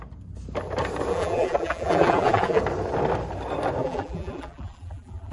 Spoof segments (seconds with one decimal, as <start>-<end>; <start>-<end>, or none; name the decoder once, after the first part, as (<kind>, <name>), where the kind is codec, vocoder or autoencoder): 1.1-2.6 (vocoder, BigVGAN v2); 3.8-5.3